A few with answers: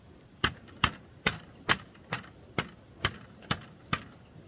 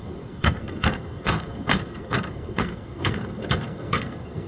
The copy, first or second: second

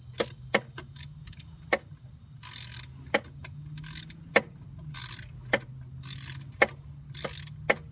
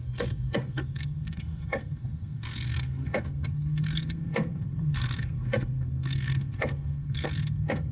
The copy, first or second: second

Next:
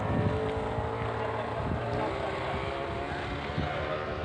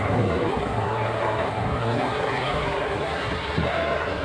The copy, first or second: second